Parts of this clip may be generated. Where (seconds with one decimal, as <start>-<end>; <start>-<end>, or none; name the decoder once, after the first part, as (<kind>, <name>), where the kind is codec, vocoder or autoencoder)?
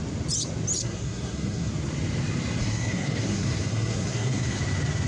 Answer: 0.8-1.7 (codec, SNAC); 2.6-4.6